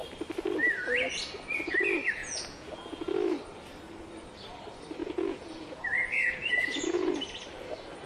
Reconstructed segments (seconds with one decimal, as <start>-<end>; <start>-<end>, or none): 2.2-3.1; 5.0-7.1